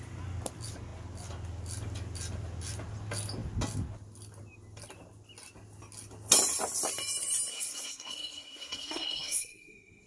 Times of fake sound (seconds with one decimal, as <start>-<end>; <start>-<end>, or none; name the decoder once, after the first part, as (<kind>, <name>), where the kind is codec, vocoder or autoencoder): 7.5-10.1 (codec, SNAC)